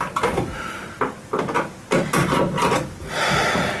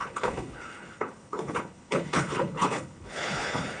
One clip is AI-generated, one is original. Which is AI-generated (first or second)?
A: second